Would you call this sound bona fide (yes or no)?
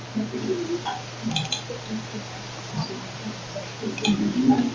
yes